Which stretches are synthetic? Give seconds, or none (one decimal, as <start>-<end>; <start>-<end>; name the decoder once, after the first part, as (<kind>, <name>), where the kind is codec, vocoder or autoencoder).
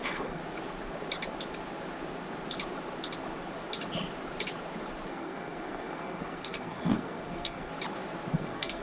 0.0-0.4 (codec, SNAC); 5.1-7.7; 8.3-8.8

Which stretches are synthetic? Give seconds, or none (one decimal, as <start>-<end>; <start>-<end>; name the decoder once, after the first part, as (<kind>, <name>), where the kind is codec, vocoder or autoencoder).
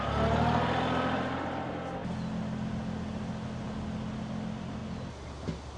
none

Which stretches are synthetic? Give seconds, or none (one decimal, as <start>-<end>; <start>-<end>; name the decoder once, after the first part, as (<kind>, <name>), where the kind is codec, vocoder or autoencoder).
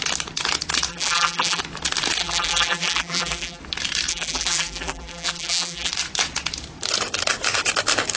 0.9-1.6 (vocoder, BigVGAN v2); 2.2-3.6; 4.1-5.9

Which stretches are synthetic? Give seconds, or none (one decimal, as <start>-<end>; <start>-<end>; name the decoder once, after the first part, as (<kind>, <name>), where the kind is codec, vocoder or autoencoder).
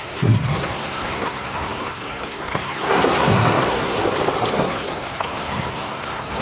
0.0-4.0 (codec, SNAC); 4.5-6.4